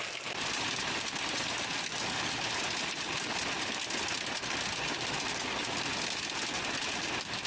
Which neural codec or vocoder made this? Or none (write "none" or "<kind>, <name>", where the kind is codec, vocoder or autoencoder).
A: none